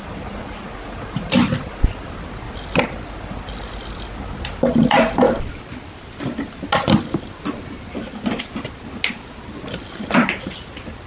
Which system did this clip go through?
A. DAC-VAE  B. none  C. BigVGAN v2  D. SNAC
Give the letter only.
B